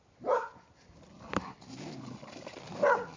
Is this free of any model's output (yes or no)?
yes